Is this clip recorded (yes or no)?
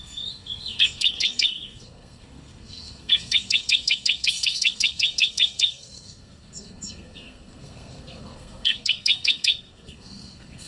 no